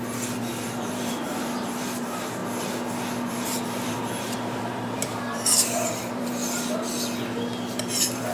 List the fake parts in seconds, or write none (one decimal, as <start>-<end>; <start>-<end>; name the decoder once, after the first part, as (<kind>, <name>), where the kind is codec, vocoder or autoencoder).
0.0-2.4 (vocoder, BigVGAN v2); 3.3-6.4; 7.8-8.3